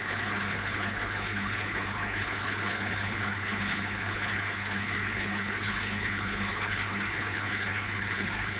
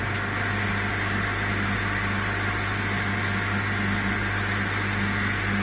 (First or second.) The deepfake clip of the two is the first